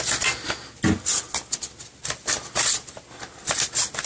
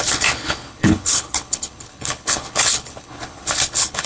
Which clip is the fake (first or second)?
second